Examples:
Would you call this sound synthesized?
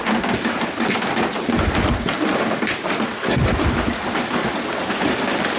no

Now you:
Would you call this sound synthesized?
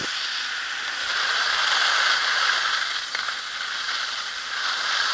no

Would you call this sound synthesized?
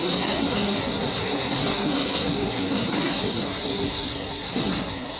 yes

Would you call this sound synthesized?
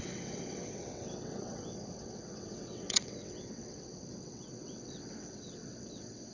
yes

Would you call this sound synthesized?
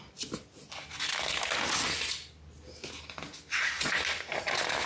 no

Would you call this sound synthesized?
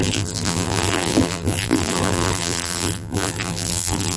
yes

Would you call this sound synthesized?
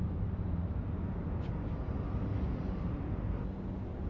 no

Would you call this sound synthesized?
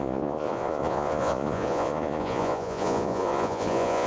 yes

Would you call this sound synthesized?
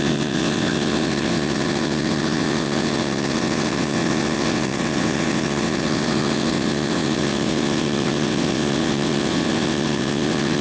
yes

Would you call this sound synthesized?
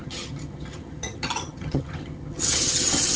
yes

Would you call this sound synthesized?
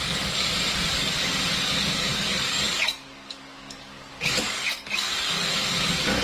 yes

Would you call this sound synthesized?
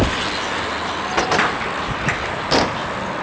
no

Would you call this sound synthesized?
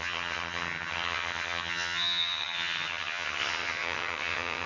yes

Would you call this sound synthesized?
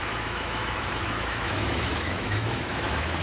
yes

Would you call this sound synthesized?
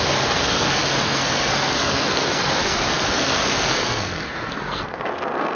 yes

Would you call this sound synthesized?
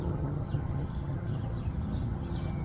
yes